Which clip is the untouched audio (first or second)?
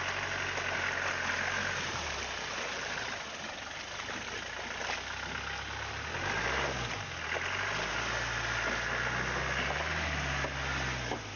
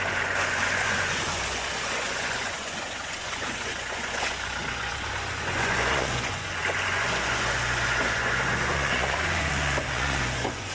first